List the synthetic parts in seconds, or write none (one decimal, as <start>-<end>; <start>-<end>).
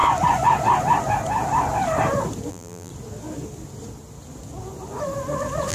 2.5-2.9